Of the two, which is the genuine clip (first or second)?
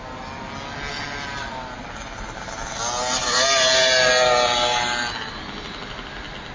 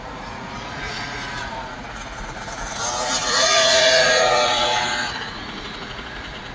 first